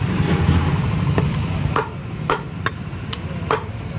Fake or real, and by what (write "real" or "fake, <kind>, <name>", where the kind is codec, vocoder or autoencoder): real